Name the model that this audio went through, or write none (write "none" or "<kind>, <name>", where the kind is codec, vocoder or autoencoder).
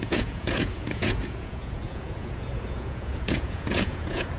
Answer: vocoder, Vocos